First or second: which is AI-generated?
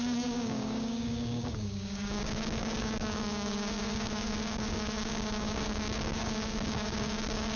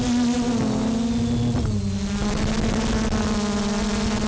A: first